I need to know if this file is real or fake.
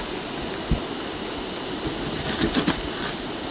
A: real